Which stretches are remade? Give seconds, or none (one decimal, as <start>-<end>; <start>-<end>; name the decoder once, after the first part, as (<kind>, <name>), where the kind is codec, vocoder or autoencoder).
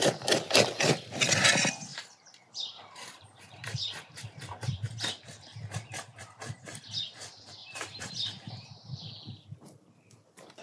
1.9-4.9 (vocoder, BigVGAN v2); 7.6-8.1